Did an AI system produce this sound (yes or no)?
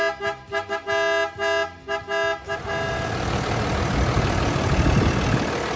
no